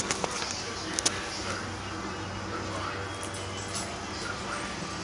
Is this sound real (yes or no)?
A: yes